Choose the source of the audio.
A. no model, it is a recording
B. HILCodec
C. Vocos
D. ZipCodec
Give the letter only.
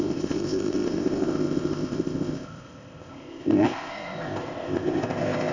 D